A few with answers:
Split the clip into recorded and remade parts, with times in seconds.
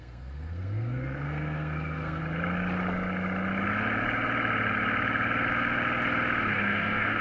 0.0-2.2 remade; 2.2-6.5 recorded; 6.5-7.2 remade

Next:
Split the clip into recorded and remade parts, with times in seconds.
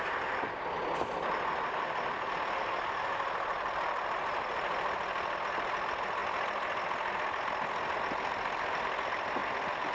0.0-9.9 recorded